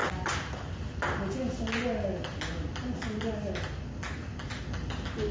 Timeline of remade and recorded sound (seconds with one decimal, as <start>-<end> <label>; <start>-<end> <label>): 0.0-5.3 recorded